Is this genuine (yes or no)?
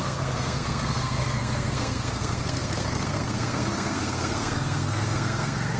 no